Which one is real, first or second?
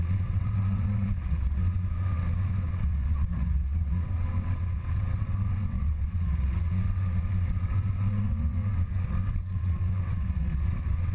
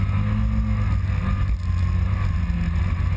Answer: second